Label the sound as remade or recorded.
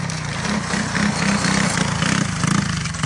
recorded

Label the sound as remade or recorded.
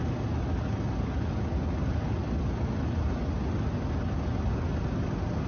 recorded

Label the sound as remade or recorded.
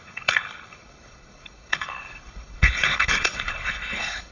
remade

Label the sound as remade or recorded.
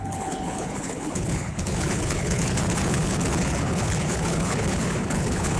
remade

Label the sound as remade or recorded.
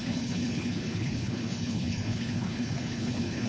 remade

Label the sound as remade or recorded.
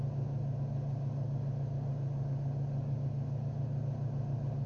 recorded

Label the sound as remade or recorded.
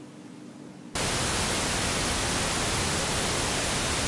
recorded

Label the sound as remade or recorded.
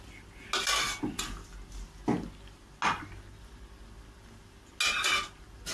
recorded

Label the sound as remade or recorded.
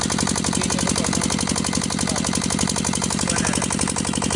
recorded